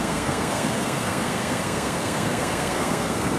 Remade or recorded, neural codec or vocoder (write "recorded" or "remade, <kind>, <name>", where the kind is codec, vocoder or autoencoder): remade, codec, SNAC